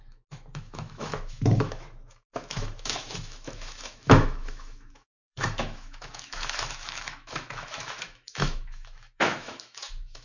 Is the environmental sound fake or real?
fake